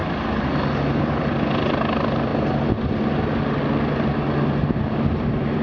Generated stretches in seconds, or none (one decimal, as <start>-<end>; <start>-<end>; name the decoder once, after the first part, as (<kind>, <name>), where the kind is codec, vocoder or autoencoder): 1.0-2.3 (vocoder, BigVGAN v2); 4.7-5.6